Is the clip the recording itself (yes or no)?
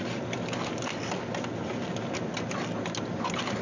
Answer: yes